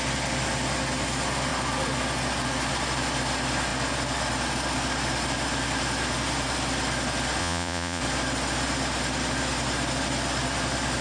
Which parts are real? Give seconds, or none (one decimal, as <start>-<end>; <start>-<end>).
0.0-7.4; 8.0-11.0